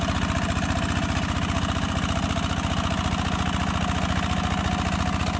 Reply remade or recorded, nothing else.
recorded